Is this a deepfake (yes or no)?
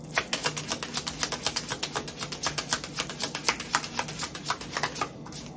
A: no